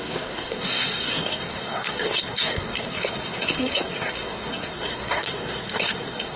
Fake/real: fake